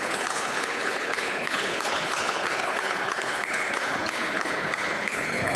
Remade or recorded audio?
remade